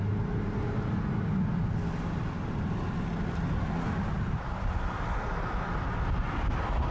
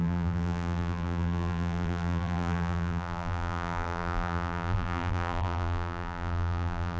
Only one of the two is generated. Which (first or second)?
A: second